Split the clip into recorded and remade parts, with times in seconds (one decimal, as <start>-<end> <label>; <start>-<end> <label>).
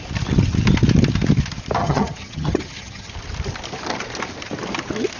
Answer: 0.0-1.8 recorded; 1.8-3.1 remade; 3.1-5.2 recorded